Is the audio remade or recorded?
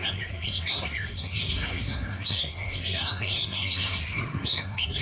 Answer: remade